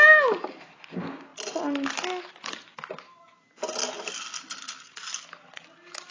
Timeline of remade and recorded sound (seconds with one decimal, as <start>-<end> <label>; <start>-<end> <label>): 0.0-6.1 recorded